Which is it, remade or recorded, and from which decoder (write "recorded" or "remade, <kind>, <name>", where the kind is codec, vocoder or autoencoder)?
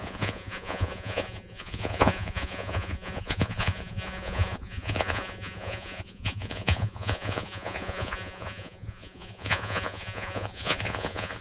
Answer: remade, vocoder, Vocos